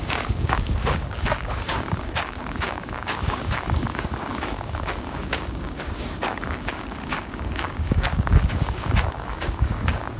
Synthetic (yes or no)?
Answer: yes